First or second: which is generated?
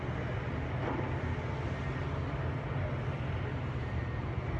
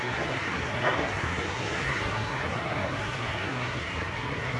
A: second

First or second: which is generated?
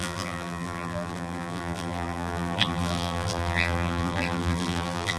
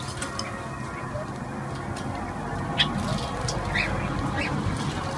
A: first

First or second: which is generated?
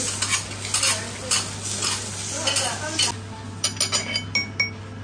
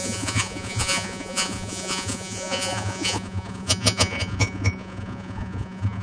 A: second